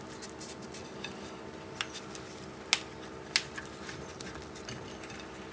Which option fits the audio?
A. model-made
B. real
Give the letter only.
B